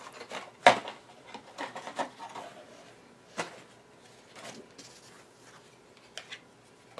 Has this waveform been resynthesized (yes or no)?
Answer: no